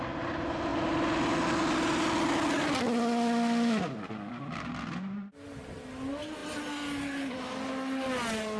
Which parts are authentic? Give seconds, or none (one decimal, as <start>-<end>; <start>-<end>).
0.0-8.6